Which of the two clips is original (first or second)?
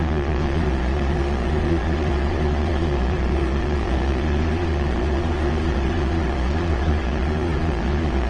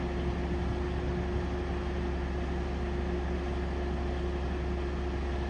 second